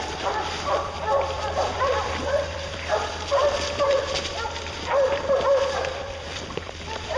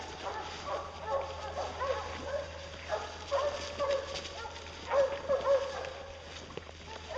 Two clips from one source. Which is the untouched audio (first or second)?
second